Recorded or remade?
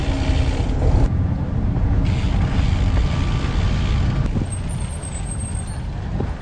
recorded